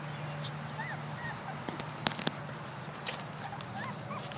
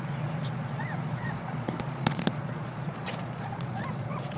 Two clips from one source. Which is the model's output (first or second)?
second